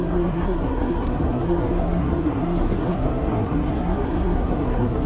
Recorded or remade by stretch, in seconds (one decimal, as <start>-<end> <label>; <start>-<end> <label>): 0.0-5.1 remade